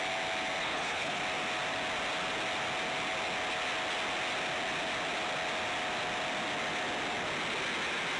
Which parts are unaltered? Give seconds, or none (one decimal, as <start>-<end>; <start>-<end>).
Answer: 0.0-0.6; 1.2-8.2